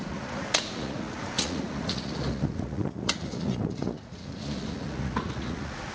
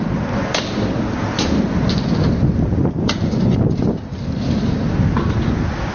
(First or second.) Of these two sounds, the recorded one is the second